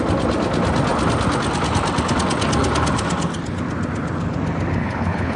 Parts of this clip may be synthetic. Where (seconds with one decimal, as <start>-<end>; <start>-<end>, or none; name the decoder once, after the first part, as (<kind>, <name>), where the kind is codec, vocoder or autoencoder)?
4.8-5.4 (codec, HILCodec)

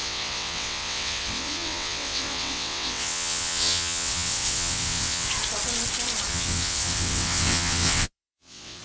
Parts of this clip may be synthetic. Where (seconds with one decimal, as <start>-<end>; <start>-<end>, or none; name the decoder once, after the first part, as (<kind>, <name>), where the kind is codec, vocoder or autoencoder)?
0.0-5.3 (vocoder, WaveNeXt); 6.3-8.8

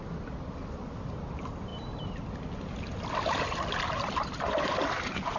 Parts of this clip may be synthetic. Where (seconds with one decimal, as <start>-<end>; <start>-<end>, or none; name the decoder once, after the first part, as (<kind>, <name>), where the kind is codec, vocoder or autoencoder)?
none

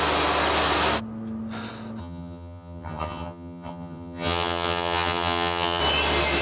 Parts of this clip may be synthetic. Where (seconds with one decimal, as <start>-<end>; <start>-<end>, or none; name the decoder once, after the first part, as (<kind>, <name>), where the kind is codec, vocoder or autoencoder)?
2.0-5.8 (vocoder, HiFi-GAN)

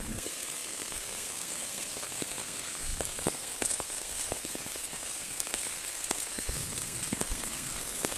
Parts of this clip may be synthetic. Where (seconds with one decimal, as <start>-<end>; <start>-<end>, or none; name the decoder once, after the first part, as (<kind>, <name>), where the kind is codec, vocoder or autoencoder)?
0.0-8.2 (codec, SNAC)

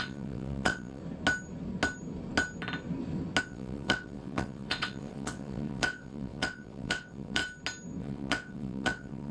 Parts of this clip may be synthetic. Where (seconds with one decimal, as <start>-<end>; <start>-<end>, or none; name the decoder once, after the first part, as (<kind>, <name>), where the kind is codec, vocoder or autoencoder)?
0.0-1.0 (vocoder, WaveNeXt); 3.4-7.4; 8.0-9.3

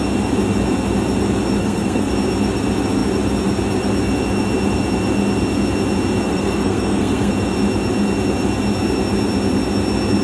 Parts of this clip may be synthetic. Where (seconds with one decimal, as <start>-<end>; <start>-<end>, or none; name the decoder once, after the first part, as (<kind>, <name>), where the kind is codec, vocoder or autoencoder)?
1.6-2.1 (codec, SNAC); 6.3-7.3

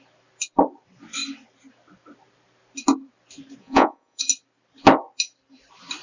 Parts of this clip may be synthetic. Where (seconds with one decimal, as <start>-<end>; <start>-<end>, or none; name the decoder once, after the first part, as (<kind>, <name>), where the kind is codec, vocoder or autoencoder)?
3.6-4.2 (vocoder, Vocos)